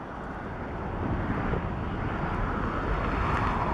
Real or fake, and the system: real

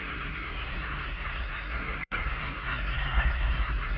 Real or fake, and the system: fake, codec, SNAC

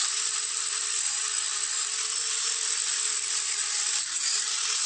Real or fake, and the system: real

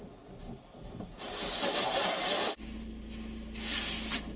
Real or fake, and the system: real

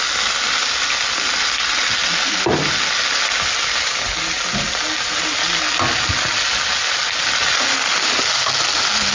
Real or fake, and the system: real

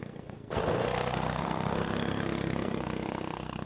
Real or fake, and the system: fake, codec, SNAC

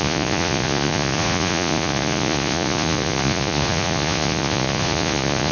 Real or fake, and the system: fake, vocoder, Vocos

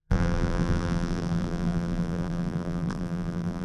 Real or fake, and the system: fake, vocoder, BigVGAN v2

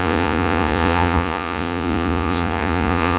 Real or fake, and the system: fake, vocoder, Vocos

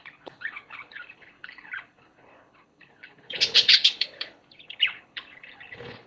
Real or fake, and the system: fake, codec, HILCodec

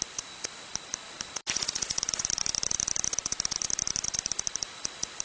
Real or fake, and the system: real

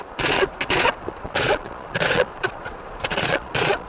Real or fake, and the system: fake, vocoder, Vocos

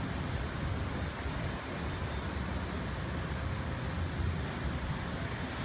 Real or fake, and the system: real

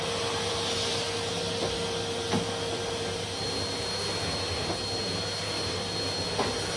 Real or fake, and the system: real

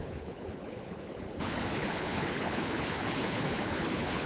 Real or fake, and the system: fake, codec, HILCodec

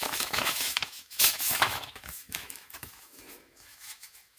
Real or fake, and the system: fake, autoencoder, DAC-VAE